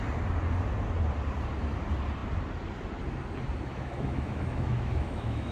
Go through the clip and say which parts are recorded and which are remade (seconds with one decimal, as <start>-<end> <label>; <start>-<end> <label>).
0.0-3.7 recorded; 3.7-5.5 remade

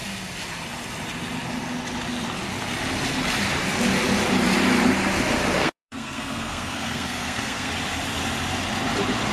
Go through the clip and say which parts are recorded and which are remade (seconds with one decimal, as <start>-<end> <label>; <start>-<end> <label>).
0.0-5.6 recorded; 5.6-7.7 remade; 7.7-9.3 recorded

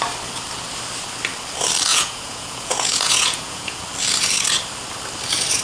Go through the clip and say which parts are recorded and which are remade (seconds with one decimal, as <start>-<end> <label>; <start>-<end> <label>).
0.0-1.9 recorded; 1.9-3.8 remade; 3.8-5.6 recorded

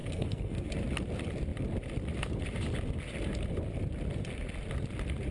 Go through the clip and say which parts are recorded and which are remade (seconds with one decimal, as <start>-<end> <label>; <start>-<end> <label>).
0.0-0.7 remade; 0.7-5.3 recorded

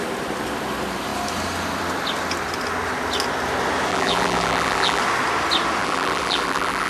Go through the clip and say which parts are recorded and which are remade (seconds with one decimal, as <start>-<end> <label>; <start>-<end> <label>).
0.0-3.9 recorded; 3.9-5.0 remade; 5.0-5.8 recorded; 5.8-6.9 remade

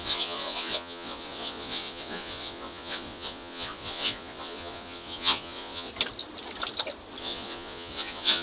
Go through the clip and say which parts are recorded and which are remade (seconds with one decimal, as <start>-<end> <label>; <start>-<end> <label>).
0.0-5.9 remade; 5.9-7.2 recorded; 7.2-8.4 remade

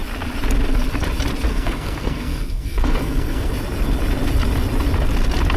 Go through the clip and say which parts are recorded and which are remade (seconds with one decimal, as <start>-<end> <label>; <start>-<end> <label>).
0.0-1.5 recorded; 1.5-3.5 remade; 3.5-5.6 recorded

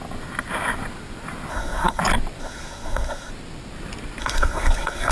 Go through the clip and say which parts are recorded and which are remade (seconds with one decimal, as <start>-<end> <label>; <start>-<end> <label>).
0.0-1.5 recorded; 1.5-2.0 remade; 2.0-2.4 recorded; 2.4-3.3 remade; 3.3-4.2 recorded; 4.2-5.1 remade